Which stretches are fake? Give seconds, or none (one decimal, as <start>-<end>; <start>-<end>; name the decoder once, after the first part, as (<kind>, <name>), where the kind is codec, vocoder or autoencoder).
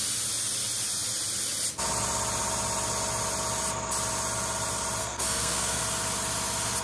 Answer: 5.0-5.8 (codec, SNAC)